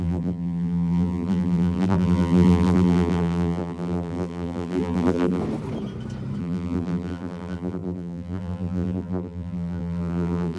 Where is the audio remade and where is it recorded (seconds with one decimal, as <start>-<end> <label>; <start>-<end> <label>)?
0.0-5.4 remade; 5.4-6.4 recorded; 6.4-10.6 remade